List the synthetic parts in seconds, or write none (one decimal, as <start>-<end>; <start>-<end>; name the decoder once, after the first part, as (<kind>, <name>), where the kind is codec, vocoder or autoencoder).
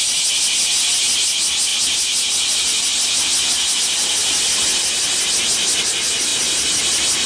none